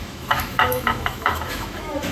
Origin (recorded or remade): remade